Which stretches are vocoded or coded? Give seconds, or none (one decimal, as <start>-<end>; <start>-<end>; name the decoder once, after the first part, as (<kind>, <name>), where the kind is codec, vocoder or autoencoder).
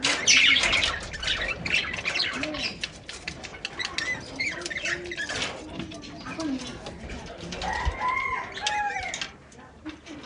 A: none